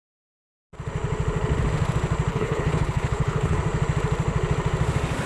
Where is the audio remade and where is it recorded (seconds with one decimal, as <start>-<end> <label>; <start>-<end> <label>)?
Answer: 0.0-2.3 recorded; 2.3-3.6 remade; 3.6-5.3 recorded